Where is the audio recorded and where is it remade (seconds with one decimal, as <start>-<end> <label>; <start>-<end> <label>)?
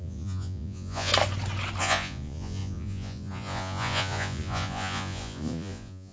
0.0-1.1 remade; 1.1-1.8 recorded; 1.8-6.1 remade